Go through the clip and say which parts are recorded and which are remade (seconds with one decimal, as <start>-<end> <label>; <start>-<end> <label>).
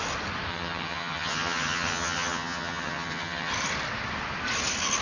0.0-0.5 recorded; 0.5-3.5 remade; 3.5-5.0 recorded